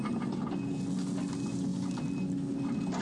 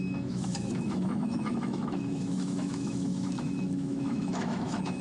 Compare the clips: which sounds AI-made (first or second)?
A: second